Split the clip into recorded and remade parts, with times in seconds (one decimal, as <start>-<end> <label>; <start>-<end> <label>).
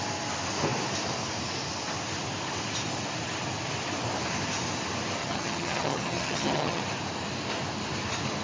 0.0-5.2 recorded; 5.2-6.8 remade; 6.8-8.4 recorded